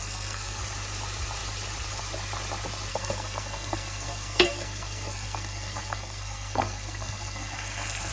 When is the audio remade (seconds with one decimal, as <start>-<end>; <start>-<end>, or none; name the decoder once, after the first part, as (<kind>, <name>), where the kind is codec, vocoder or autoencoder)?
0.0-0.6 (codec, SNAC); 2.9-8.1